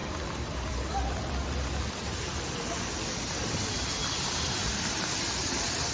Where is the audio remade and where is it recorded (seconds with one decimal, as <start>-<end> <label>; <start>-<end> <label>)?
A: 0.0-2.4 remade; 2.4-4.0 recorded; 4.0-4.9 remade; 4.9-5.9 recorded